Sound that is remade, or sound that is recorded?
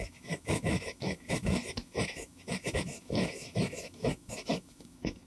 remade